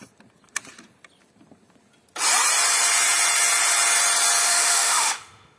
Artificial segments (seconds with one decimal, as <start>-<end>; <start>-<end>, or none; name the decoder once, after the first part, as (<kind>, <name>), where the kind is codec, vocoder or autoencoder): 4.4-5.6 (autoencoder, DAC-VAE)